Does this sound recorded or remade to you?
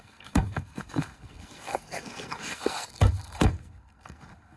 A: remade